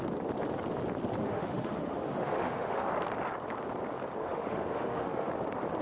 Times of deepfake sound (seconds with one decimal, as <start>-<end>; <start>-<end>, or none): 1.2-2.9; 4.2-5.3